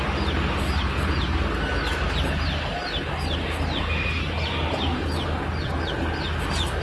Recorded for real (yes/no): yes